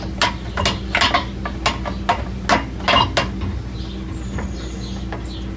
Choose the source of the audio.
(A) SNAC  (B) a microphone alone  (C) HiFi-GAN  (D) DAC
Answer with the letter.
B